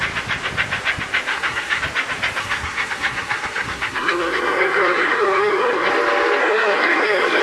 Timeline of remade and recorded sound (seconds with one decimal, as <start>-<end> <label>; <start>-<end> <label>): 0.0-1.3 recorded; 1.3-1.8 remade; 1.8-2.4 recorded; 2.4-5.9 remade; 5.9-6.4 recorded; 6.4-7.4 remade